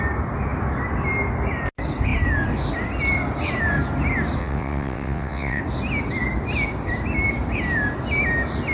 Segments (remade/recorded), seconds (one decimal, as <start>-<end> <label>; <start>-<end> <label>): 0.0-4.4 recorded; 4.4-5.6 remade; 5.6-8.7 recorded